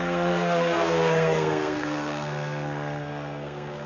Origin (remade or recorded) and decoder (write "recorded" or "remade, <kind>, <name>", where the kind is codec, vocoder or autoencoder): remade, codec, SNAC